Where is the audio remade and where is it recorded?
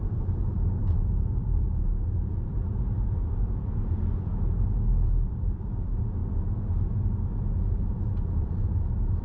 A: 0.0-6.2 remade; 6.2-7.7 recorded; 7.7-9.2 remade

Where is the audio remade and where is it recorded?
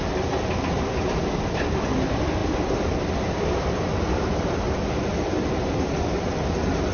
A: 0.0-2.4 recorded; 2.4-6.5 remade; 6.5-6.9 recorded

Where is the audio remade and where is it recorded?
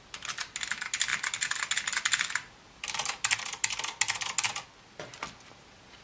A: 0.0-6.0 recorded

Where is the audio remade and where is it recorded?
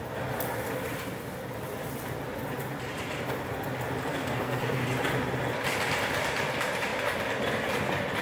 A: 0.0-4.1 recorded; 4.1-4.8 remade; 4.8-8.2 recorded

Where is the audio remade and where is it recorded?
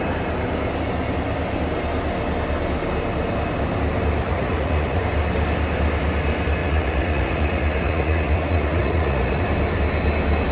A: 0.0-4.2 recorded; 4.2-5.0 remade; 5.0-6.6 recorded; 6.6-9.4 remade; 9.4-10.5 recorded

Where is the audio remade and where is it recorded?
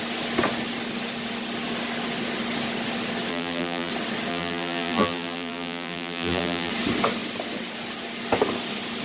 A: 0.0-3.3 recorded; 3.3-3.9 remade; 3.9-4.3 recorded; 4.3-6.7 remade; 6.7-9.0 recorded